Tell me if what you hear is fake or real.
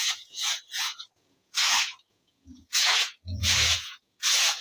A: fake